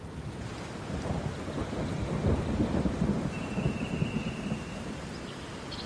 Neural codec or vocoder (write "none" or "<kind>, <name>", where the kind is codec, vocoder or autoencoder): none